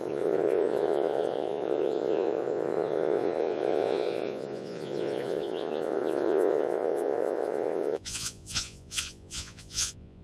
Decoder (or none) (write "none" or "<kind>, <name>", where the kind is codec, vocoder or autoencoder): vocoder, Vocos